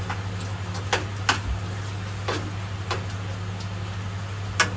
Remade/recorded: recorded